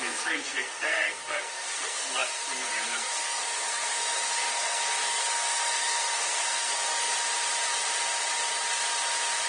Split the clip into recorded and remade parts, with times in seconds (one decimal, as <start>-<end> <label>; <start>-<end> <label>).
0.0-7.1 remade; 7.1-9.5 recorded